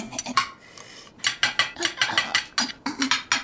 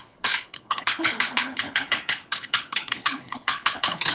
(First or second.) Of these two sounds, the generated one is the second